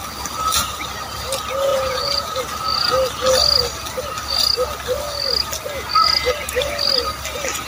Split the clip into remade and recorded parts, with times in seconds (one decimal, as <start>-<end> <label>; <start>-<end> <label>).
0.0-1.7 recorded; 1.7-2.4 remade; 2.4-7.7 recorded